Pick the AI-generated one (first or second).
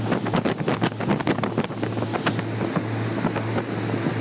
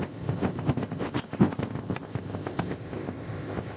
second